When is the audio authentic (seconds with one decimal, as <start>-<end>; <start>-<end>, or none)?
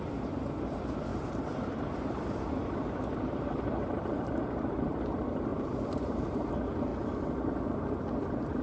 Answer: 0.0-1.1; 5.1-5.5; 6.5-8.6